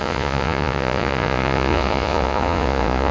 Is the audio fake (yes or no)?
yes